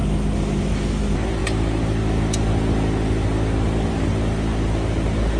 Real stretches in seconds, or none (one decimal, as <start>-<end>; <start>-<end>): 0.0-5.4